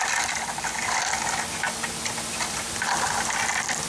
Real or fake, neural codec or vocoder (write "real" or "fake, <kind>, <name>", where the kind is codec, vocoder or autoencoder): real